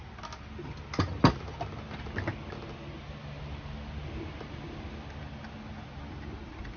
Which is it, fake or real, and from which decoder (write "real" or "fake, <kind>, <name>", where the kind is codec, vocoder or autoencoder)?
real